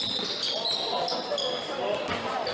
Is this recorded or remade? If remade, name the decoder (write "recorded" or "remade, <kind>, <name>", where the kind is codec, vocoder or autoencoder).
recorded